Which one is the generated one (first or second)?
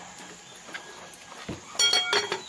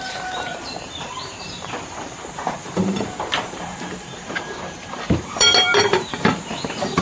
second